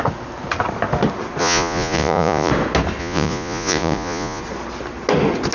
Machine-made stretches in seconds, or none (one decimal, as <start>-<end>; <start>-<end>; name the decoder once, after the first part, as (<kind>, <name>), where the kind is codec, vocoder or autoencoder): 1.4-2.5 (vocoder, Vocos); 3.0-4.4